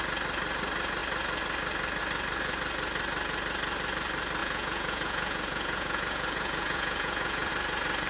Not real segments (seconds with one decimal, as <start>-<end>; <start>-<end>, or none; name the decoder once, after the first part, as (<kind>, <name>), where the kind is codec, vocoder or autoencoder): 4.4-7.5 (vocoder, Vocos)